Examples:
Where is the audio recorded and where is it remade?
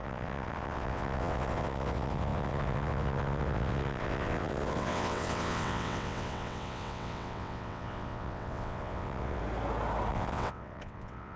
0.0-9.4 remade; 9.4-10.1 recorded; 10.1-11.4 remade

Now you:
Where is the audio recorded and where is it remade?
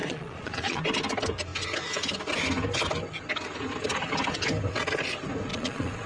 0.0-0.8 remade; 0.8-5.5 recorded; 5.5-6.1 remade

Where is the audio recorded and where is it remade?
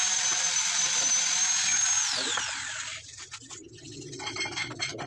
0.0-1.2 remade; 1.2-1.7 recorded; 1.7-5.1 remade